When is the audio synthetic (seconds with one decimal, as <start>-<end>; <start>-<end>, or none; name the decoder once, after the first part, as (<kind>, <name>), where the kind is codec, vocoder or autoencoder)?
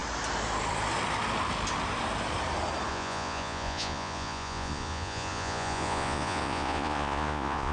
2.9-7.7 (vocoder, Vocos)